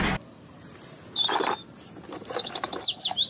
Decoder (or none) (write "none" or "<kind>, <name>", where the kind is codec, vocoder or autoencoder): none